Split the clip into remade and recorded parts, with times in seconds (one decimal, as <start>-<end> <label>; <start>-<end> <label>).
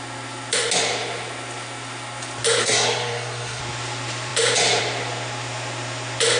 0.0-2.6 recorded; 2.6-3.6 remade; 3.6-6.4 recorded